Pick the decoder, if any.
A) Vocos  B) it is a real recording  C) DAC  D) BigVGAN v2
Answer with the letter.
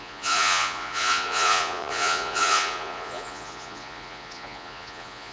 A